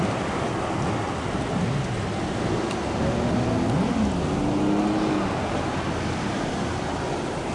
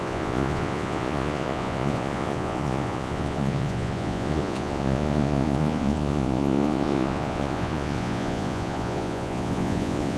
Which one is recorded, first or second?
first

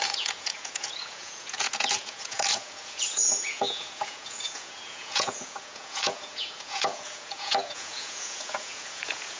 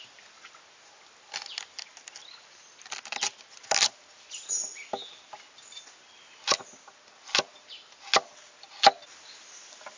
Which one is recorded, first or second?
second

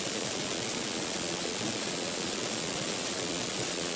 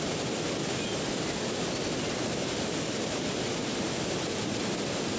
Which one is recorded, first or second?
second